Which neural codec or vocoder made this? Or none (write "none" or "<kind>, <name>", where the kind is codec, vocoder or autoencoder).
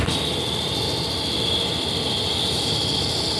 none